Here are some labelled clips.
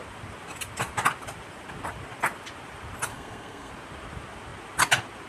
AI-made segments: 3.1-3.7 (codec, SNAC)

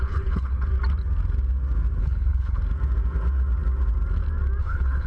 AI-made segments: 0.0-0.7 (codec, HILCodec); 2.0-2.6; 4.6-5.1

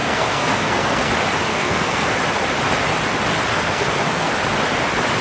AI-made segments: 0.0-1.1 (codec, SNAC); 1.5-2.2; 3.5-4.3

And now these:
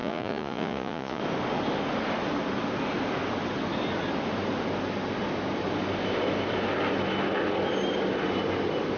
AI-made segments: 0.0-1.2 (vocoder, Vocos)

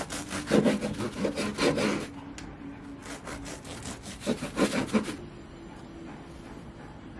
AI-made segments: none